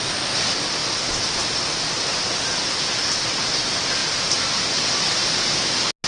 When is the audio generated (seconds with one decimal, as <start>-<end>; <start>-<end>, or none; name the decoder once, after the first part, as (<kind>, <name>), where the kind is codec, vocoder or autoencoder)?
none

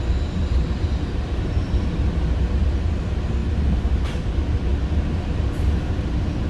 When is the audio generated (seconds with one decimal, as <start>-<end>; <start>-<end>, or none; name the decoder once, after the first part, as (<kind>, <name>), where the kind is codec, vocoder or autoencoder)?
0.0-3.4 (vocoder, BigVGAN v2); 4.0-4.7; 5.8-6.5

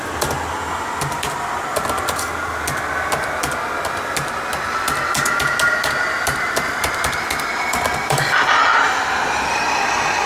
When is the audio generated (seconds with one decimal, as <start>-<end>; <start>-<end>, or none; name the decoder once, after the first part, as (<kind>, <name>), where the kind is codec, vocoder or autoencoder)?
none

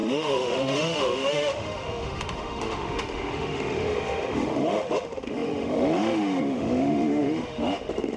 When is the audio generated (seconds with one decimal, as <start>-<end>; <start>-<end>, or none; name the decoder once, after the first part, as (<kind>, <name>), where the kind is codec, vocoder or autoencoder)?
0.0-8.2 (autoencoder, DAC-VAE)

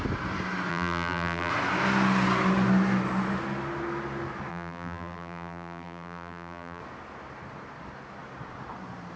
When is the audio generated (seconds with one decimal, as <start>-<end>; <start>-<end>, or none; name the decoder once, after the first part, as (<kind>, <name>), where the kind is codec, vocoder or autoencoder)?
0.7-1.5 (vocoder, BigVGAN v2); 4.5-6.8

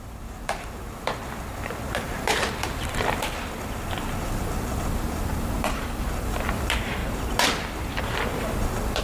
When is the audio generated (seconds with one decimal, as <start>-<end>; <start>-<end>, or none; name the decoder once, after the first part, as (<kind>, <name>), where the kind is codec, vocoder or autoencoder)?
0.0-7.0 (vocoder, BigVGAN v2); 7.8-9.0

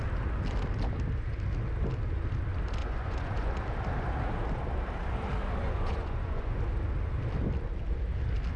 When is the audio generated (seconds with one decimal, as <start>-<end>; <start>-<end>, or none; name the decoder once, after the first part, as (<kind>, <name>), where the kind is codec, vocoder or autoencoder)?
2.8-3.5 (vocoder, Vocos); 5.6-6.6

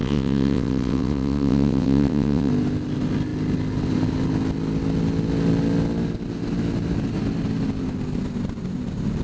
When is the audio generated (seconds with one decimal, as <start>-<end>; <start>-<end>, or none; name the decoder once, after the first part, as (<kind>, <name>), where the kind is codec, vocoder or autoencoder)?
0.0-2.5 (vocoder, WaveNeXt)